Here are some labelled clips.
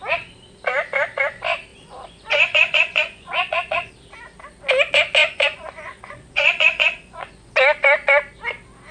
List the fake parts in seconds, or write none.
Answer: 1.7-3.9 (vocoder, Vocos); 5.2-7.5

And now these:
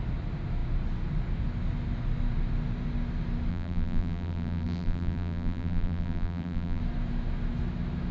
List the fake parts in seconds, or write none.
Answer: 3.5-6.8 (vocoder, BigVGAN v2)

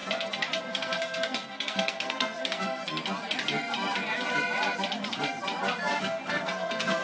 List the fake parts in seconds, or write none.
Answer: 0.6-2.8 (codec, SNAC); 6.0-7.0

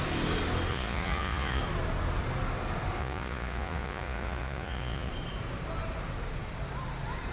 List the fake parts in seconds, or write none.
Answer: 0.7-1.6 (vocoder, Vocos); 3.0-5.1

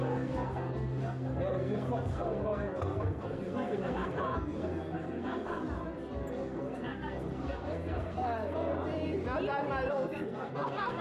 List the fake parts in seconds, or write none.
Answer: 0.0-5.6 (codec, SNAC); 6.3-8.7; 9.9-11.0